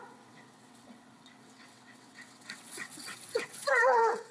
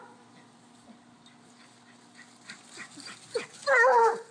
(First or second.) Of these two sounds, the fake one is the first